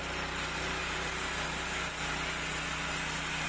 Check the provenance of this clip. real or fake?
real